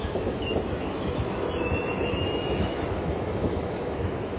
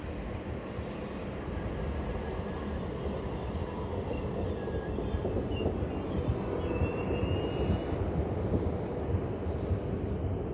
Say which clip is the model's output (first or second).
first